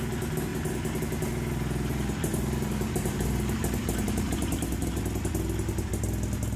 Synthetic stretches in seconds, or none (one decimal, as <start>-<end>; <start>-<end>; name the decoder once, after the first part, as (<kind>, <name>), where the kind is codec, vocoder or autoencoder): 1.9-5.0 (vocoder, BigVGAN v2)